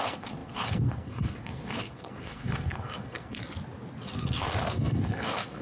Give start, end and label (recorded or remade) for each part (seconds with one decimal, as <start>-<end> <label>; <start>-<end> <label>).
0.0-3.4 remade; 3.4-4.1 recorded; 4.1-5.6 remade

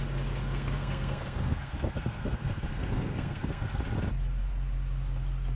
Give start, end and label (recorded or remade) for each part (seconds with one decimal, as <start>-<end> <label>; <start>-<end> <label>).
0.0-0.4 recorded; 0.4-3.8 remade; 3.8-5.6 recorded

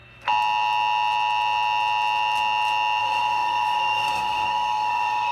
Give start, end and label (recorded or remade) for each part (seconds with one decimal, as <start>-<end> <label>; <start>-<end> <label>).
0.0-3.0 recorded; 3.0-5.3 remade

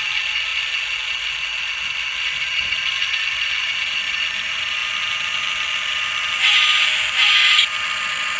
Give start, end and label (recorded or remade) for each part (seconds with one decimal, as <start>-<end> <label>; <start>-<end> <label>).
0.0-8.4 recorded

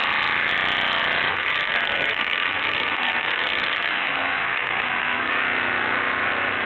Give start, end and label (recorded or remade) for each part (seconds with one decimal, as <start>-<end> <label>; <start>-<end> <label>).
0.0-1.3 recorded; 1.3-5.3 remade; 5.3-6.7 recorded

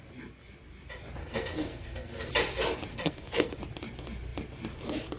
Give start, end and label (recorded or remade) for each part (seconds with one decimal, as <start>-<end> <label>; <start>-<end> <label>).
0.0-1.2 recorded; 1.2-2.3 remade; 2.3-2.9 recorded; 2.9-3.6 remade; 3.6-5.2 recorded

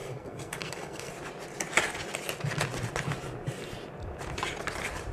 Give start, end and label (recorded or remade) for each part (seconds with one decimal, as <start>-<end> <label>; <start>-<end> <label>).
0.0-1.1 remade; 1.1-5.1 recorded